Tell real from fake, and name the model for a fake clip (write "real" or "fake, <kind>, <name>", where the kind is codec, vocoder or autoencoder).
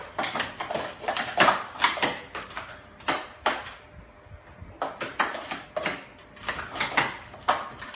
real